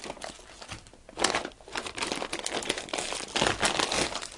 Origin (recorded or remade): recorded